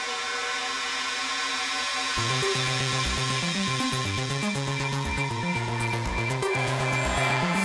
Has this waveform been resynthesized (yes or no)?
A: yes